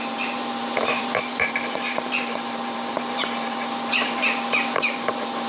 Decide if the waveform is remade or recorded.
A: remade